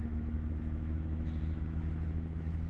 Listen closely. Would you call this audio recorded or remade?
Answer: remade